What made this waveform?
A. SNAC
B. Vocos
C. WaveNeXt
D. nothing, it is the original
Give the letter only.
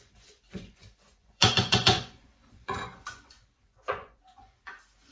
B